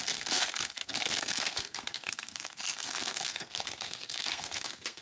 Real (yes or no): no